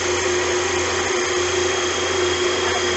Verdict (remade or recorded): recorded